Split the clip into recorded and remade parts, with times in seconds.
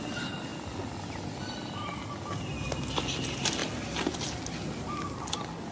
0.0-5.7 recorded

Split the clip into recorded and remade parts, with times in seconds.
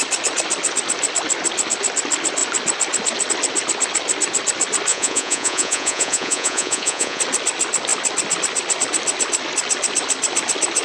0.0-4.9 recorded; 4.9-7.2 remade; 7.2-10.8 recorded